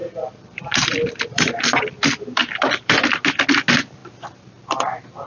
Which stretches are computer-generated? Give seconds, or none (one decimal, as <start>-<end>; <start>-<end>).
0.0-1.5; 2.4-3.0